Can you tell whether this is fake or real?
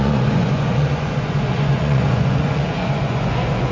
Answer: fake